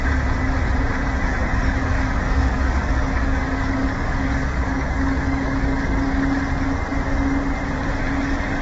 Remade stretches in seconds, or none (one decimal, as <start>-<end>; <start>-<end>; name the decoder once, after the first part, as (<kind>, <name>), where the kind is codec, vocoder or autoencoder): 1.4-6.3 (codec, DAC)